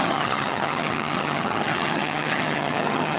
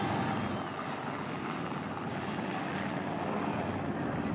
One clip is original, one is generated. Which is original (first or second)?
second